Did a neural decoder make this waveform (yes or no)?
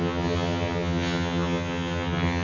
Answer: yes